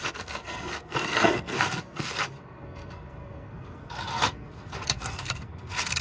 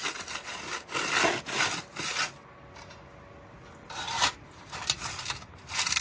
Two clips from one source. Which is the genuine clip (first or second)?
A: second